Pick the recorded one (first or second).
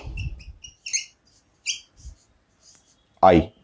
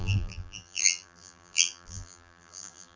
first